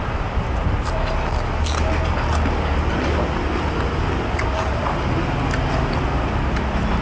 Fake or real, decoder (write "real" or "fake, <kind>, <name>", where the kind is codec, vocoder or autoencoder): real